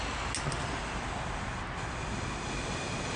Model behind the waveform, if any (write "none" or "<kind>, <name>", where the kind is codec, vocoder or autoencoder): none